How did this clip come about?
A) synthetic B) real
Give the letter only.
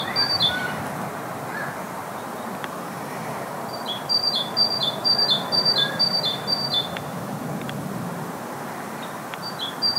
A